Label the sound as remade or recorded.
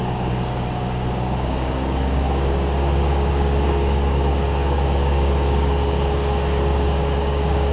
remade